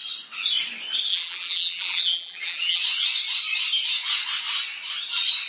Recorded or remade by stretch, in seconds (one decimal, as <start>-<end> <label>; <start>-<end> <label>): 0.0-1.1 recorded; 1.1-2.8 remade; 2.8-5.5 recorded